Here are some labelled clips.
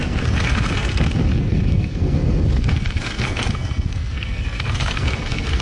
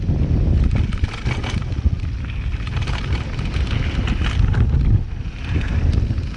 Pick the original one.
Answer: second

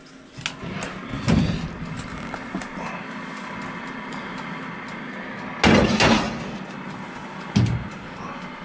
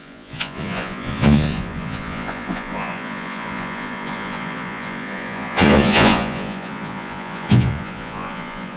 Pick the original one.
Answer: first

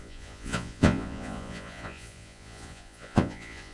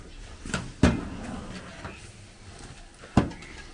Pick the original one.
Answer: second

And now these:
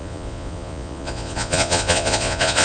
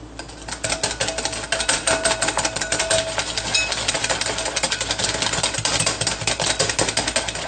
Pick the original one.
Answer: second